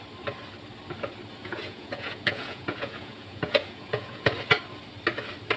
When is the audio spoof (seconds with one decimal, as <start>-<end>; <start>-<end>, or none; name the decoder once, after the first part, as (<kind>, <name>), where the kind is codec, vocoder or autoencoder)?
1.4-4.3 (vocoder, Vocos)